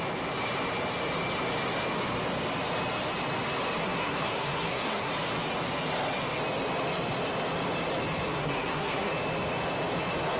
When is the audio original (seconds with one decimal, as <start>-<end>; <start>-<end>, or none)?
0.0-3.8; 5.1-8.4; 9.1-10.4